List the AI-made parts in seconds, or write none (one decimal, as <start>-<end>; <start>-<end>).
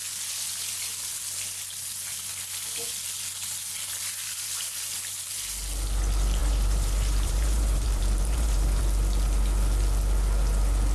6.4-8.8